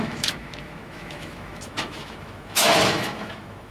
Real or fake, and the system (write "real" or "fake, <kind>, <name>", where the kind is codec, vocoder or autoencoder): fake, autoencoder, DAC-VAE